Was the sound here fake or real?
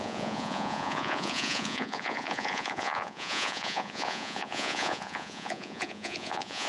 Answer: fake